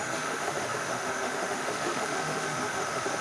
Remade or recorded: remade